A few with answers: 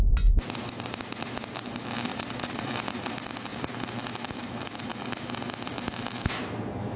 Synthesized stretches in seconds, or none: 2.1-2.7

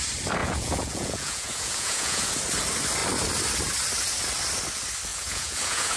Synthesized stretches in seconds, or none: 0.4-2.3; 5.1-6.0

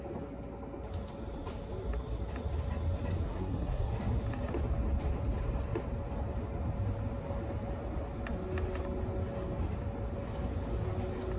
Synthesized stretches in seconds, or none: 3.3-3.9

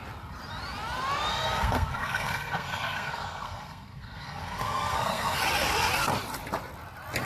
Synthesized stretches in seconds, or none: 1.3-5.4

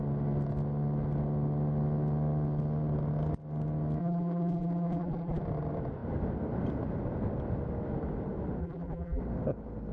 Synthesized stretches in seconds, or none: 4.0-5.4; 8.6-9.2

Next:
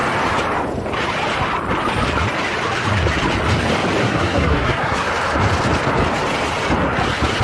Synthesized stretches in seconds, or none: 4.0-5.1

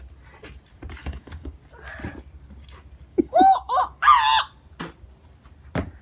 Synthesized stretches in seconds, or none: 1.0-1.5; 3.1-3.8

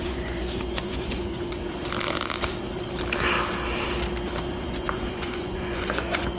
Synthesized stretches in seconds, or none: 0.0-1.6; 4.6-6.4